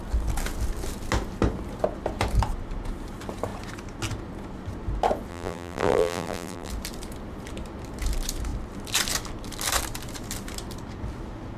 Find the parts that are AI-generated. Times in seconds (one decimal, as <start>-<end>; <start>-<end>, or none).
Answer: 5.3-6.7